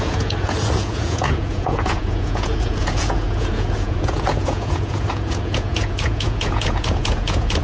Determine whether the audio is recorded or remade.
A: remade